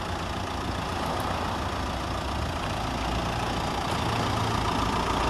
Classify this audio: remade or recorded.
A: recorded